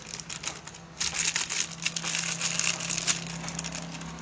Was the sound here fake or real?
real